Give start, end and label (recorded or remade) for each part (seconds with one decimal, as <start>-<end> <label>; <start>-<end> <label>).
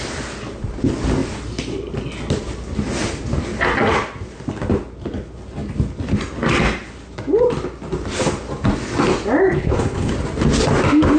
0.0-9.5 recorded; 9.5-10.1 remade; 10.1-11.2 recorded